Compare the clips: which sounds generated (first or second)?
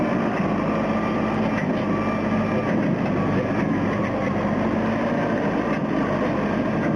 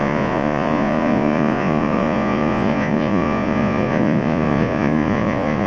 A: second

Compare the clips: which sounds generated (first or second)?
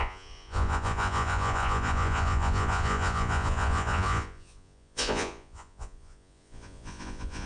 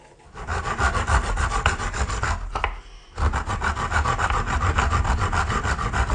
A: first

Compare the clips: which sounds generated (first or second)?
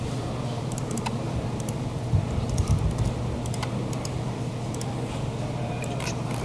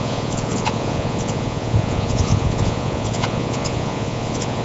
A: second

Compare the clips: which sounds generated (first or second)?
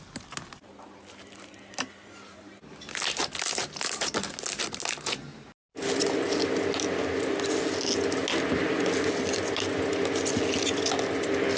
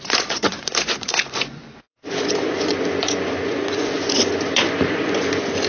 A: second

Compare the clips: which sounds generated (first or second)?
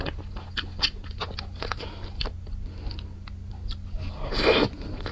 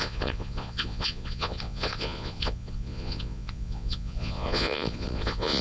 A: second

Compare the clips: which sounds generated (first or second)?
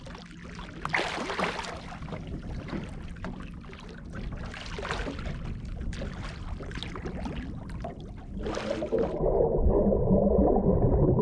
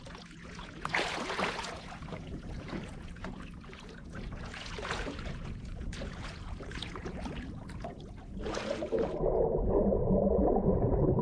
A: second